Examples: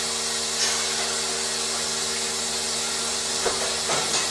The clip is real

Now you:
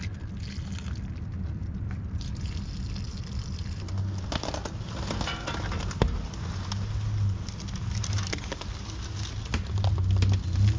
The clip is real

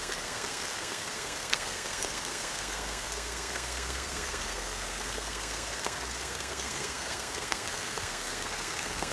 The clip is fake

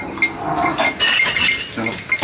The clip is real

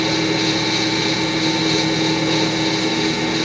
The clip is real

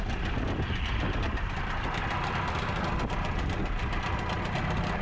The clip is real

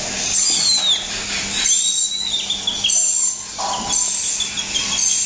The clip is real